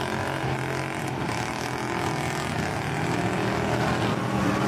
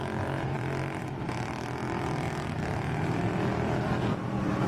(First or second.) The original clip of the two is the first